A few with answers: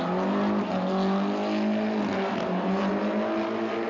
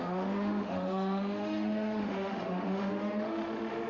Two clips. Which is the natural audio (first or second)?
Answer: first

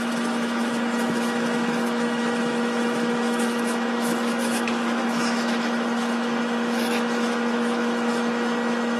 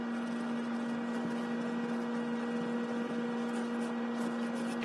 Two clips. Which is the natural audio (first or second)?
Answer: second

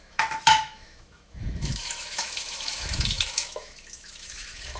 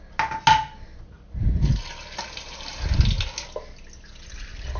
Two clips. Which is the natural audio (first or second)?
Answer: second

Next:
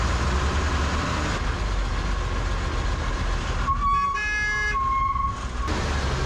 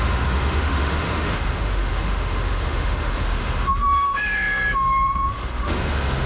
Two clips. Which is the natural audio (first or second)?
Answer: first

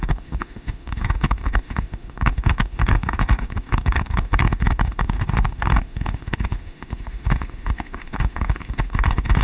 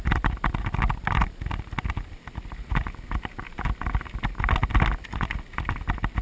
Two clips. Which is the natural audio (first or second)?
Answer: second